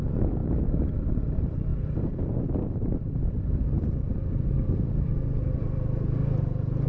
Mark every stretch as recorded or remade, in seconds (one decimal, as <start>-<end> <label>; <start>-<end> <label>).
0.0-0.4 remade; 0.4-1.1 recorded; 1.1-6.2 remade; 6.2-6.9 recorded